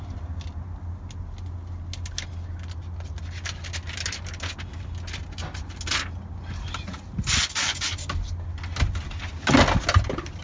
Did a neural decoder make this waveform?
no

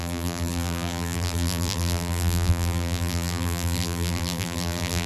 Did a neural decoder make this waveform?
yes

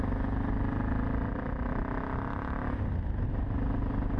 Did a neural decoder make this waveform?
no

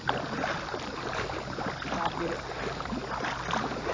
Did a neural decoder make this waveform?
no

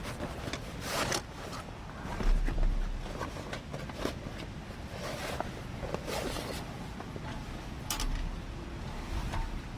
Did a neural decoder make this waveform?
no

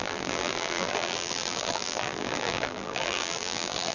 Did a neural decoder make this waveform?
yes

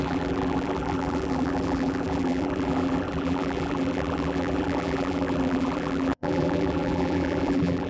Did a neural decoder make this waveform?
yes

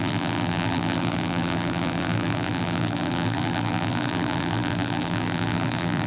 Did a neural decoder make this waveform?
yes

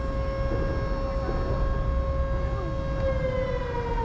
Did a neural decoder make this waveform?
no